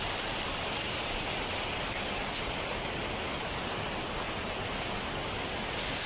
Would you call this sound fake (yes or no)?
no